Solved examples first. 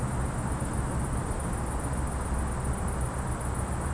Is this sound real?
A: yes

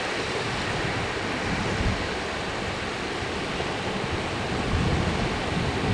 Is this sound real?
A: yes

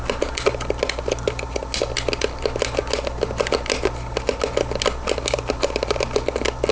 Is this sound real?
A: yes